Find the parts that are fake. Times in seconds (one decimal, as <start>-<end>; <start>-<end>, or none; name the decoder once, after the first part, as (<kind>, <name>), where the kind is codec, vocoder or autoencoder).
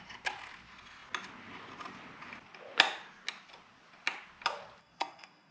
4.8-5.5 (codec, SNAC)